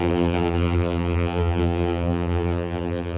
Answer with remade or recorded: remade